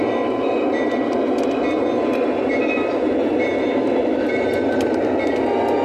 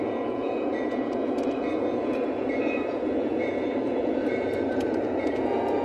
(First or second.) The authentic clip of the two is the first